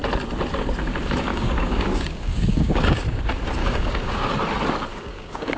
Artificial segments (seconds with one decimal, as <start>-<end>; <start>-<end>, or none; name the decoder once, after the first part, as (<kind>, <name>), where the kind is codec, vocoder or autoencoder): 1.3-3.2 (codec, DAC); 3.6-4.3; 4.9-5.6